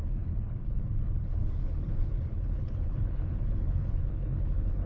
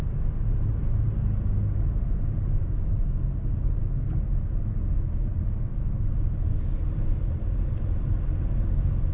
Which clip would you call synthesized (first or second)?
first